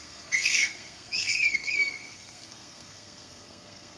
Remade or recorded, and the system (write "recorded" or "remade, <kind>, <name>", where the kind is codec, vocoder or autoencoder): remade, codec, SNAC